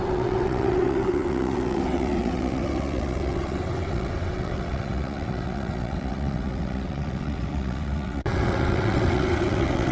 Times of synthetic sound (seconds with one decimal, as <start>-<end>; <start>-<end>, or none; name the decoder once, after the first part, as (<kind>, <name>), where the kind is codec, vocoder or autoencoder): 0.0-9.9 (vocoder, WaveNeXt)